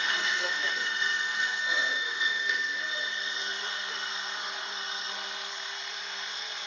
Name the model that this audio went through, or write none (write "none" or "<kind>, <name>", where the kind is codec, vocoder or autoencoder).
codec, SNAC